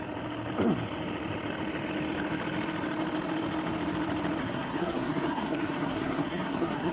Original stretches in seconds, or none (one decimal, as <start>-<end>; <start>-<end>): 0.0-4.4